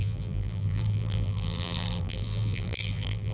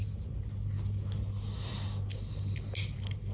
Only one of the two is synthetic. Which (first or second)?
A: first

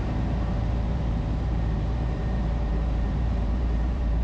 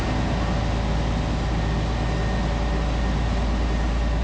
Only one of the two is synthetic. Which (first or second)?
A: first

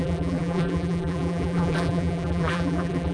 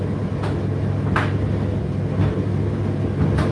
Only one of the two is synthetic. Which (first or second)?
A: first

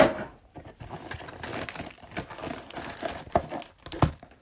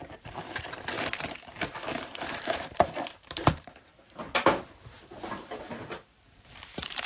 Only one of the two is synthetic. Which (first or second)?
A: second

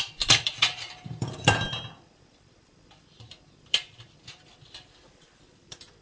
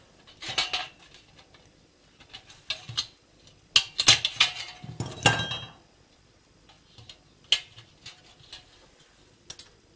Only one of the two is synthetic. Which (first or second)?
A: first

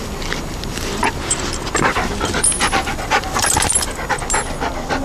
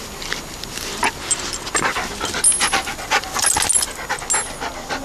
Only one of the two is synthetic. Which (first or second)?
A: first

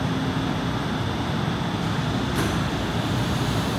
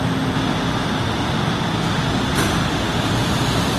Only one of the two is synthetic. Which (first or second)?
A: first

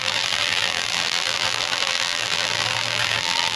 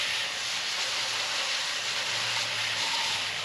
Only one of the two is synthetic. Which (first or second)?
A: first